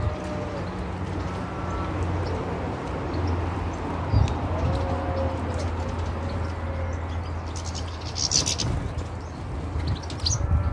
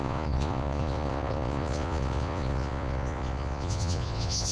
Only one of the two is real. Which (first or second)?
first